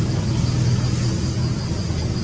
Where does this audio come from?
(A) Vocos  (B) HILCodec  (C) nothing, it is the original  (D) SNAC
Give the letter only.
C